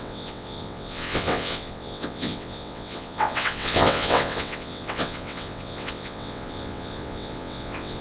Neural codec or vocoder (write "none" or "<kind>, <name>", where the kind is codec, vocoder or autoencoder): vocoder, WaveNeXt